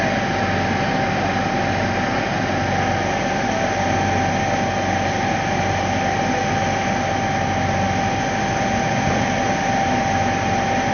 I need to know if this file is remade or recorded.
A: recorded